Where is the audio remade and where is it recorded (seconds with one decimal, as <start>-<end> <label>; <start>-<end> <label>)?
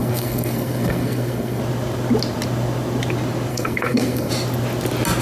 0.0-1.6 remade; 1.6-3.5 recorded; 3.5-4.3 remade; 4.3-5.2 recorded